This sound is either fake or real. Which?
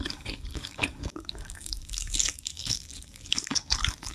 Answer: fake